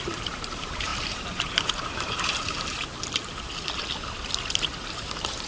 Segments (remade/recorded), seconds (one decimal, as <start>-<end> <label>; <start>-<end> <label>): 0.0-2.9 remade; 2.9-4.9 recorded; 4.9-5.5 remade